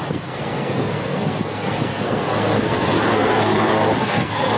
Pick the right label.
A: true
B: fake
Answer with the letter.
B